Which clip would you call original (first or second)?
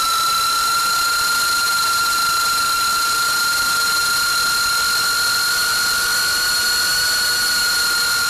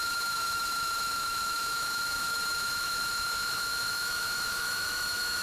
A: first